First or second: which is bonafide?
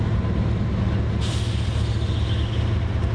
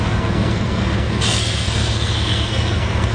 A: first